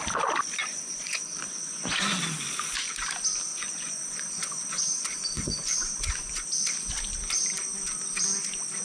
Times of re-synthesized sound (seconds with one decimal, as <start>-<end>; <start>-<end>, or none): 0.7-2.2; 3.5-6.4